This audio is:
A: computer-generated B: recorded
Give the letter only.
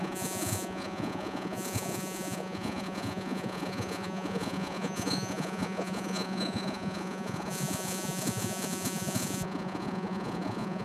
A